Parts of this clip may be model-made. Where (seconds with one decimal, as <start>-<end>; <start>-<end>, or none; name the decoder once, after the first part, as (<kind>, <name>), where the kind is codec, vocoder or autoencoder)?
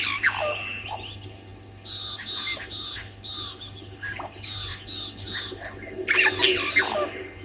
none